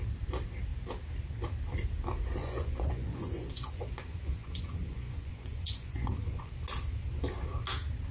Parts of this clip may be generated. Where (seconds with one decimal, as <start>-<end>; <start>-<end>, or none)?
2.4-6.5